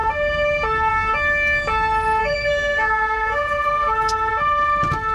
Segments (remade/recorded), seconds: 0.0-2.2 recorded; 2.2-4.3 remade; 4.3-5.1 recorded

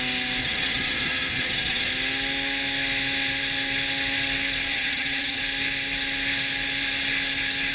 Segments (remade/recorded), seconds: 0.0-0.4 recorded; 0.4-1.9 remade; 1.9-4.7 recorded; 4.7-5.4 remade; 5.4-7.7 recorded

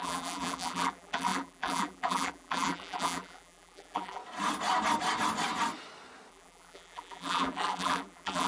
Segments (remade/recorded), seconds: 0.0-4.2 remade; 4.2-6.3 recorded; 6.3-8.5 remade